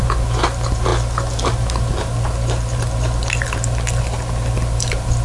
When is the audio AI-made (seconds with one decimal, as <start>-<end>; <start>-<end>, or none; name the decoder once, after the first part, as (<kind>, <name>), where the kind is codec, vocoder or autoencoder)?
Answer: none